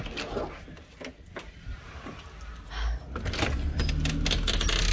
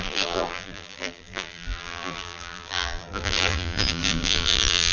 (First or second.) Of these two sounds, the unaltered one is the first